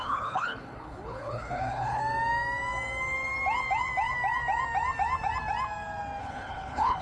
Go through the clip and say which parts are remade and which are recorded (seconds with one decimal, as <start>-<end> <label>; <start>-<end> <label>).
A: 0.0-2.0 remade; 2.0-6.2 recorded; 6.2-7.0 remade